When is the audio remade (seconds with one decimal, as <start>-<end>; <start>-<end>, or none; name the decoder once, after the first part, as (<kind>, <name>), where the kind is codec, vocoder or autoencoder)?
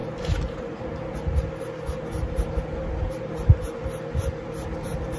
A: 0.0-0.9 (vocoder, BigVGAN v2)